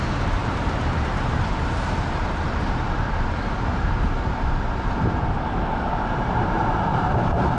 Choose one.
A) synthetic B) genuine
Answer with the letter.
A